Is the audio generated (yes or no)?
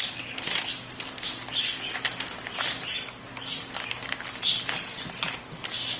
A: no